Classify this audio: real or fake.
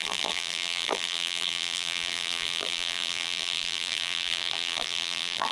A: fake